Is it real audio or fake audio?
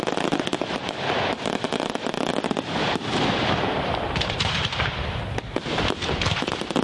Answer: fake